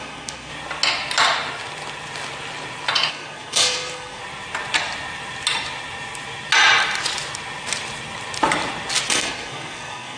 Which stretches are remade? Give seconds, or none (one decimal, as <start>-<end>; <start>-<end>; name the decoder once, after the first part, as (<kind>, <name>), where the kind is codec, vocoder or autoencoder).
0.0-0.5 (codec, SNAC); 3.1-4.2; 9.1-10.2